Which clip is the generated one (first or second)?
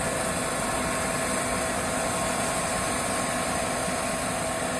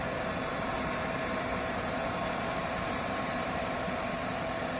second